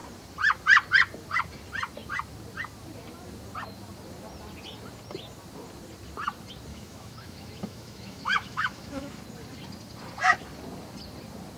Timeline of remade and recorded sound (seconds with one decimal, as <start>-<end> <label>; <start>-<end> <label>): 0.0-6.7 recorded; 6.7-9.2 remade; 9.2-11.6 recorded